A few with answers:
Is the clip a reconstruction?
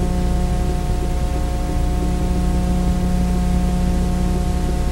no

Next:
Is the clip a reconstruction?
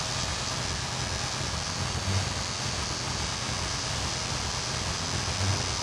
no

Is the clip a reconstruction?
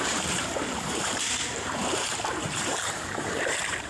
yes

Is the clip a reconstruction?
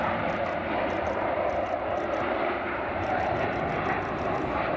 no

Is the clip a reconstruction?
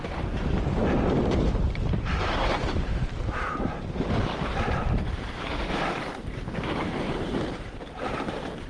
yes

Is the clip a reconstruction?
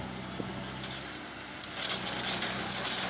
no